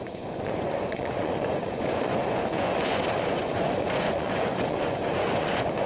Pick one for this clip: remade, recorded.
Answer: remade